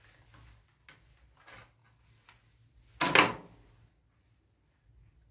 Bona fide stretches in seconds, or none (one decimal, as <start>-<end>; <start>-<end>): 0.0-5.3